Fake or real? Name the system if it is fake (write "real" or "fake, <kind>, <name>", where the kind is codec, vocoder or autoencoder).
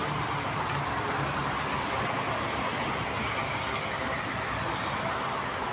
real